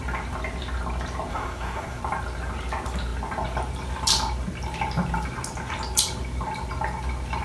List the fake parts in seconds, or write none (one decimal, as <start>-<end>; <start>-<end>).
1.3-2.0